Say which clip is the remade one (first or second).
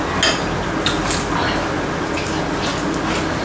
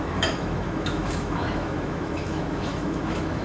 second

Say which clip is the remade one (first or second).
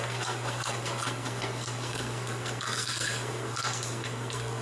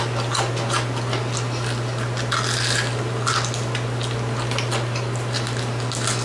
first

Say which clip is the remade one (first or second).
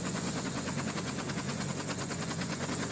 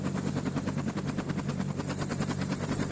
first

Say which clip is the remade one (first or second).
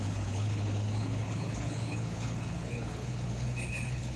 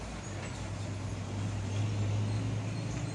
first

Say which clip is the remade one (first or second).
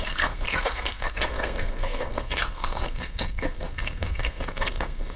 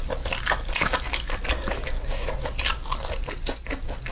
first